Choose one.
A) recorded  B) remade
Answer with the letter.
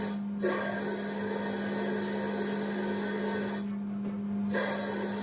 A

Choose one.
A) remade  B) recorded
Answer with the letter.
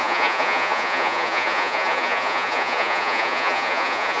A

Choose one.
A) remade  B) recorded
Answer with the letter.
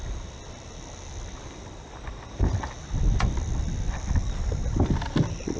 B